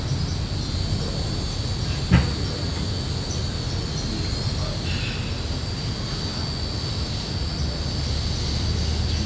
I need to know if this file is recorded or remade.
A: recorded